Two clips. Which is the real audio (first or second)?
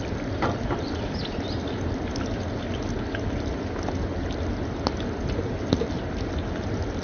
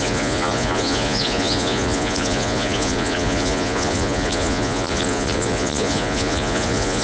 first